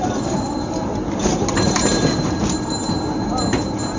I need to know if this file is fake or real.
real